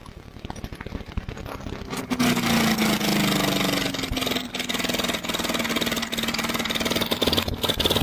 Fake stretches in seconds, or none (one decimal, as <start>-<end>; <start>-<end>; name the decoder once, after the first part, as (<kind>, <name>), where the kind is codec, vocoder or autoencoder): none